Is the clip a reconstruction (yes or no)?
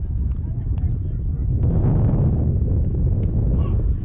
no